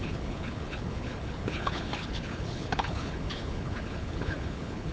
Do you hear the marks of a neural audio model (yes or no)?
yes